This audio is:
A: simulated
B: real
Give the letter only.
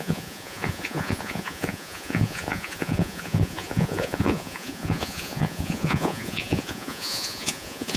A